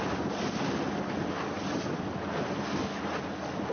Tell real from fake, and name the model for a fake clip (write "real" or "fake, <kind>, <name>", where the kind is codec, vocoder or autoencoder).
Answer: real